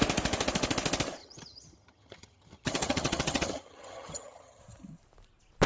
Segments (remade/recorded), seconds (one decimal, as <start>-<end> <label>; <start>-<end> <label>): 0.0-1.2 recorded; 1.2-4.6 remade; 4.6-5.7 recorded